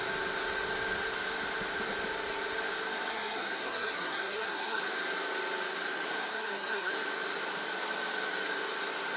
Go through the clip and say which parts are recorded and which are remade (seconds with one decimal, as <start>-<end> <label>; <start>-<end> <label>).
0.0-3.1 recorded; 3.1-4.8 remade; 4.8-6.3 recorded; 6.3-6.9 remade; 6.9-9.2 recorded

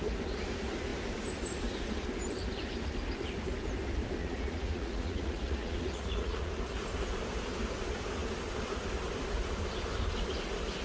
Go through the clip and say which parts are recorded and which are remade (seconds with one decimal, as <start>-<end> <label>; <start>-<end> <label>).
0.0-4.2 recorded; 4.2-6.5 remade; 6.5-10.8 recorded